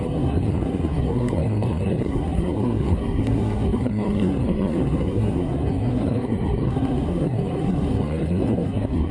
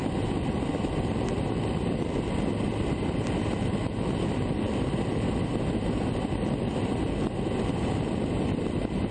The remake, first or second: first